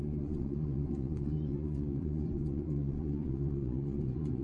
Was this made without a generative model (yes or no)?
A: no